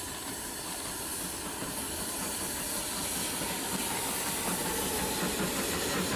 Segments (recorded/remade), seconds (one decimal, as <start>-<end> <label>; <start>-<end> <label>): 0.0-6.2 recorded